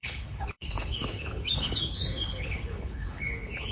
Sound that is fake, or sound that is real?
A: fake